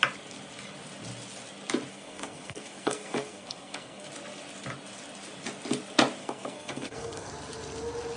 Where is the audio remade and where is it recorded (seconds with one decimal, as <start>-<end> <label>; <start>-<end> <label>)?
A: 0.0-1.9 recorded; 1.9-4.1 remade; 4.1-6.2 recorded; 6.2-7.3 remade; 7.3-8.2 recorded

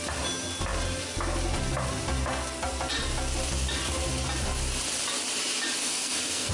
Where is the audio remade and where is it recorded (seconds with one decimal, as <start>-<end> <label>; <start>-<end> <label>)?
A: 0.0-5.8 recorded; 5.8-6.5 remade